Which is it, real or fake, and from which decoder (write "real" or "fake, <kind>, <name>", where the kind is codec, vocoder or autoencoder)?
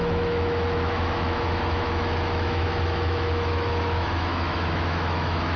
fake, autoencoder, DAC-VAE